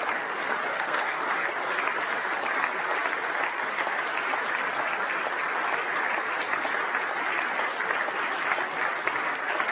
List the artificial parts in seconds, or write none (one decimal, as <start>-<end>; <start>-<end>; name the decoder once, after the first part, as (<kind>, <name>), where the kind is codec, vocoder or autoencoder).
0.7-1.2 (codec, SNAC)